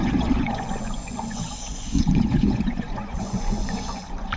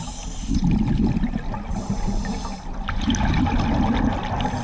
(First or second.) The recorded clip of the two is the second